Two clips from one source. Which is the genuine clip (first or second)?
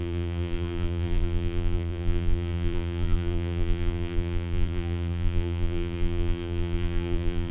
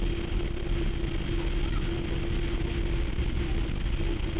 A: second